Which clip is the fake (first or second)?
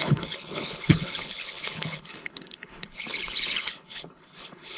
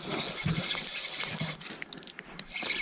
first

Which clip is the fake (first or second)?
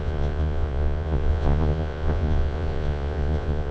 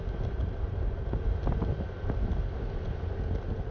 first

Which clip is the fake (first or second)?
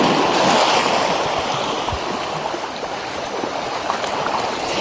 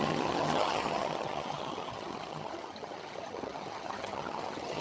second